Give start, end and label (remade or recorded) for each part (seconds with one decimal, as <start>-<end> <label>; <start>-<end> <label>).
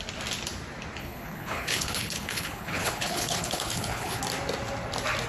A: 0.0-1.0 recorded; 1.0-4.2 remade; 4.2-5.3 recorded